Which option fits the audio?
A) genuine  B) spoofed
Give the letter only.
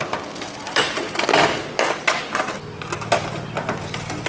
A